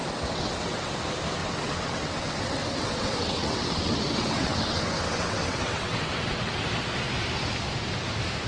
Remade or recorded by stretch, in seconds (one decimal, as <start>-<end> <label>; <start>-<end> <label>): 0.0-0.9 remade; 0.9-1.4 recorded; 1.4-6.5 remade; 6.5-8.5 recorded